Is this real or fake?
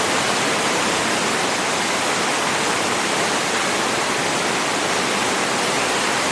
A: real